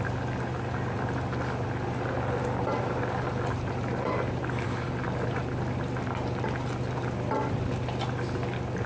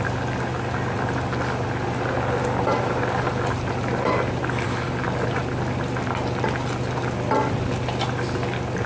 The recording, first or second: second